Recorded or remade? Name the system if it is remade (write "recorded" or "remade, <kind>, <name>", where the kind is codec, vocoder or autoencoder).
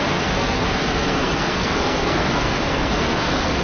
remade, codec, SNAC